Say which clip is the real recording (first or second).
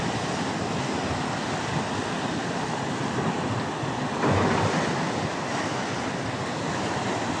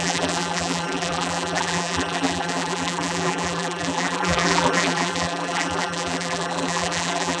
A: first